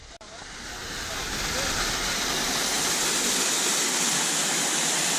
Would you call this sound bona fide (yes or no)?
yes